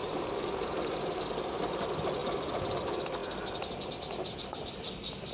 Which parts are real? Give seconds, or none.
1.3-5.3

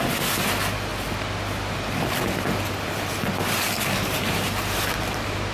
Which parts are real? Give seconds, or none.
0.0-5.5

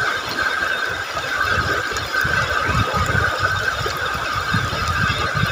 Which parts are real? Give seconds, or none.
4.8-5.5

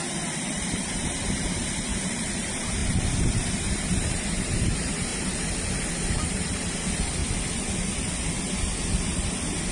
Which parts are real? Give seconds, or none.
2.8-3.3; 5.1-6.1; 7.2-9.7

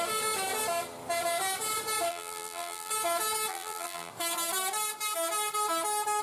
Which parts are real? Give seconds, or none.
0.0-2.1; 2.9-3.5; 4.1-6.2

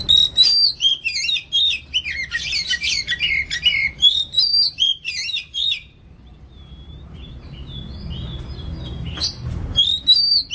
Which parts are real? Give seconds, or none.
0.0-0.4; 0.9-2.3; 3.3-3.8; 7.3-10.5